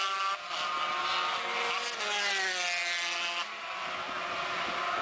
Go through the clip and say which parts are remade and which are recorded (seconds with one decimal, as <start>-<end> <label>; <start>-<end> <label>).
0.0-5.0 recorded